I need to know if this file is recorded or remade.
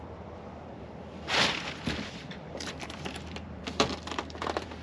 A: remade